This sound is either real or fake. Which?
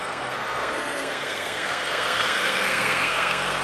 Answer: fake